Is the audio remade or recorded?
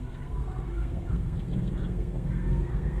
remade